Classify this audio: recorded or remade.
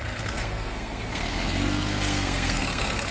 remade